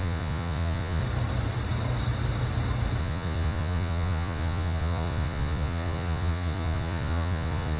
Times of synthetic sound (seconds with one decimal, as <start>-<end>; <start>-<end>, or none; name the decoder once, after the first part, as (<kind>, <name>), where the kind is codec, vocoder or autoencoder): 0.0-1.0 (vocoder, Vocos); 3.0-7.8